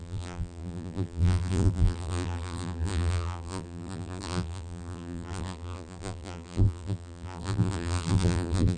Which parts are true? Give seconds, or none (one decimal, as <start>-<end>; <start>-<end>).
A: none